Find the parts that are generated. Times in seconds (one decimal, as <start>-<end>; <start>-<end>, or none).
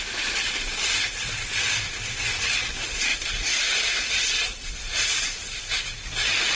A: 0.0-6.5